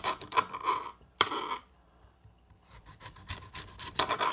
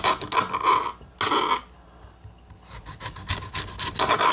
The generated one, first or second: first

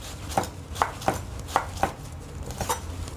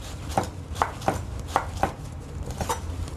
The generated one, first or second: second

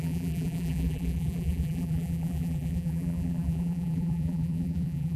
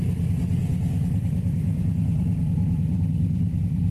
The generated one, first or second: first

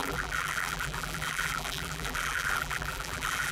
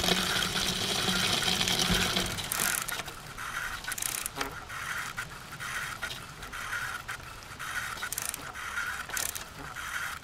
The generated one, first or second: first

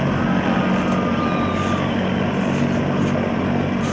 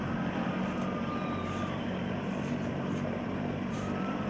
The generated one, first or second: second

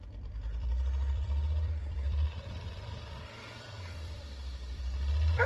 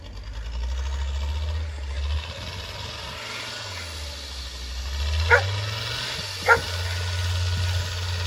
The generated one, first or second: first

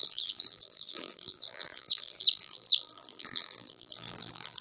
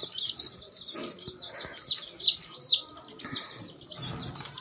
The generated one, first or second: first